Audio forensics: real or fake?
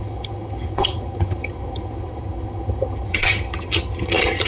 fake